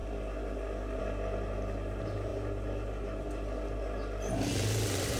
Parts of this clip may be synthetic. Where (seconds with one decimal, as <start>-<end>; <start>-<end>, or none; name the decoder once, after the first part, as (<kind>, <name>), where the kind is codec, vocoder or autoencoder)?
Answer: none